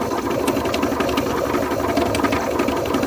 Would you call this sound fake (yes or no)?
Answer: no